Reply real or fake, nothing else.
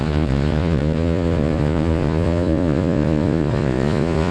fake